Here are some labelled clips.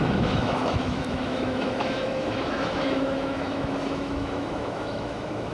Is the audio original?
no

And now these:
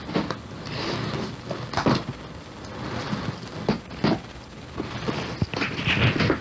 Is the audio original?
yes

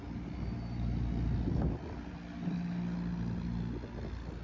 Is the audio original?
yes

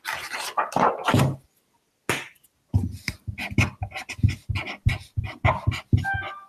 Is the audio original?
yes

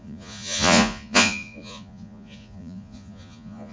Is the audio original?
no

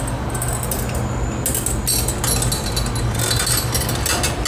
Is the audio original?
yes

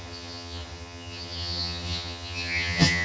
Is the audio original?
no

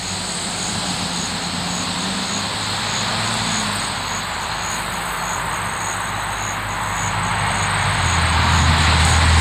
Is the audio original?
yes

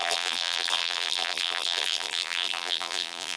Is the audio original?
no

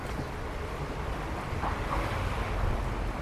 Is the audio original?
yes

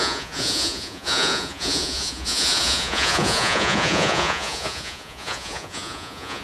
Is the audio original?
no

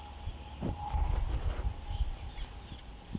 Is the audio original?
yes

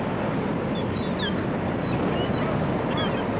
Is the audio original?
yes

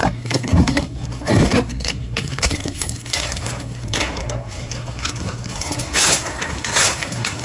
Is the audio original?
no